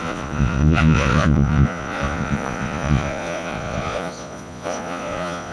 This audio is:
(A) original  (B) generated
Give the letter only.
B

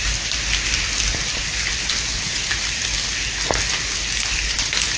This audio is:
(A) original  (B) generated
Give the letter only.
A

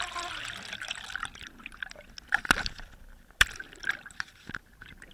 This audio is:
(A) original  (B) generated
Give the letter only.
A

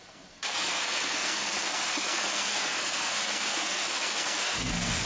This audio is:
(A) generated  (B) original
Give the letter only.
A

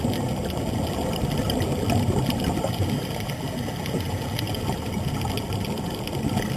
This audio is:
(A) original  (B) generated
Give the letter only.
A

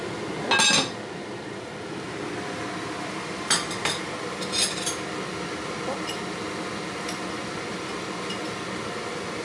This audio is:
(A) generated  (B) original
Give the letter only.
B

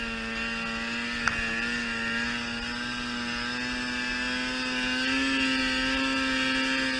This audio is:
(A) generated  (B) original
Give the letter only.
B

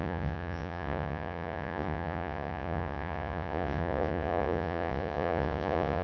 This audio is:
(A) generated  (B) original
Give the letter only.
A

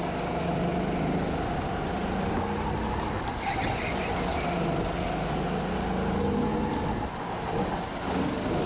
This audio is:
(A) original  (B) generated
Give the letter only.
A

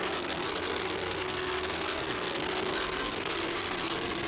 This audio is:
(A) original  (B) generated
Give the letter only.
B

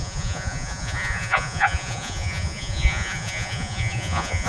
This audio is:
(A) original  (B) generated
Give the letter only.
B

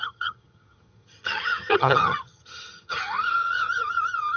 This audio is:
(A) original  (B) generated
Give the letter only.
B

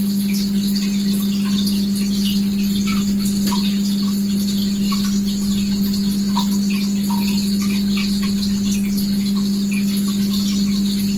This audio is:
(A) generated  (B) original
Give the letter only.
B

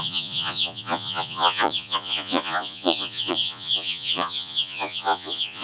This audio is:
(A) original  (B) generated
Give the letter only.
B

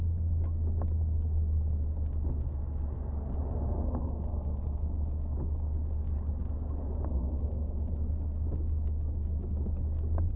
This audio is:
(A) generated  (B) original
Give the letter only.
B